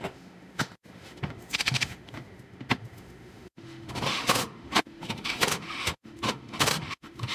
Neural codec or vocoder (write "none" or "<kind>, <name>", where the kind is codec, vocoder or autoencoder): autoencoder, DAC-VAE